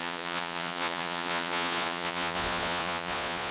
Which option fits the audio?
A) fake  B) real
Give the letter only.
A